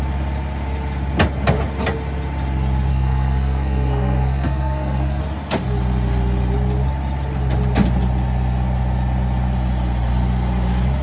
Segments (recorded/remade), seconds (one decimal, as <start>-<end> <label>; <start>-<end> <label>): 0.0-2.9 recorded; 2.9-5.2 remade; 5.2-11.0 recorded